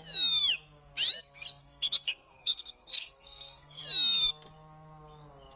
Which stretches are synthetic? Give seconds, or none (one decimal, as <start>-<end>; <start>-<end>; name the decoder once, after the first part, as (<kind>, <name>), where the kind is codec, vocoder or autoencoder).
1.6-3.8 (codec, SNAC)